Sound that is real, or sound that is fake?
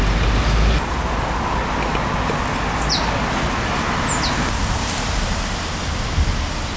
real